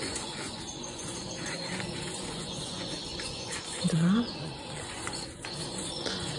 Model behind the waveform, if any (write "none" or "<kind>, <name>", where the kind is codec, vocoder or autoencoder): vocoder, Vocos